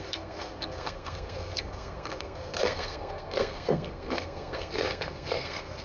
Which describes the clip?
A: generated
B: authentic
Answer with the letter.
A